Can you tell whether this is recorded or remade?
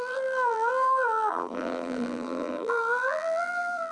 remade